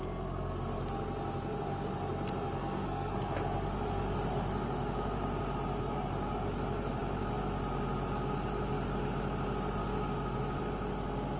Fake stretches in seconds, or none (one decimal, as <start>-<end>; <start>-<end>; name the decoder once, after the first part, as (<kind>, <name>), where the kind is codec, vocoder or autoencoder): 2.6-3.1 (codec, SNAC)